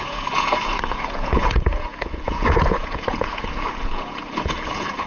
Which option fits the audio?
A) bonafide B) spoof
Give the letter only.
B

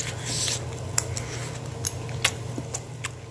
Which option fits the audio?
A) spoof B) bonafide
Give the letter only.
B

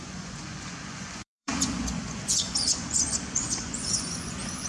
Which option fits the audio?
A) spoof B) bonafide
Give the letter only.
A